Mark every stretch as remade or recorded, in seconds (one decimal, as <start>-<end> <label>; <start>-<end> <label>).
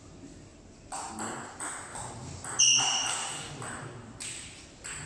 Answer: 0.0-0.5 recorded; 0.5-1.1 remade; 1.1-5.1 recorded